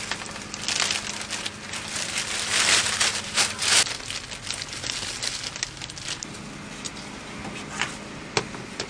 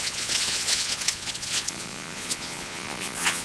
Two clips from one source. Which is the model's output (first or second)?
second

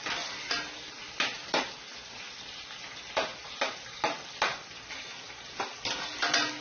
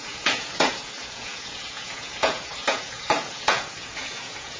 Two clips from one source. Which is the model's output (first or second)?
second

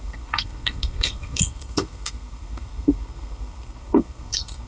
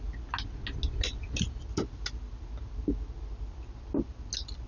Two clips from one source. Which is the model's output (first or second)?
first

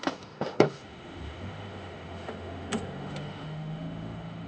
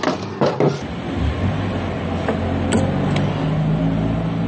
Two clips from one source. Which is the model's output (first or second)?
first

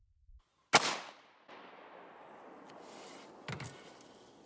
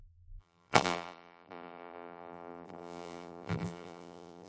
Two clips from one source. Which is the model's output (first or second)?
second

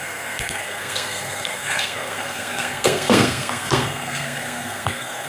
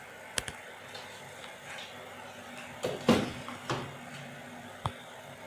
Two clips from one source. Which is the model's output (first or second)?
first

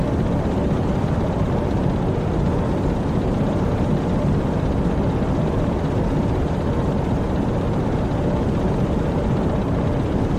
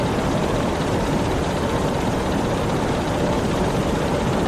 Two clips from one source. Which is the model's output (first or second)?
second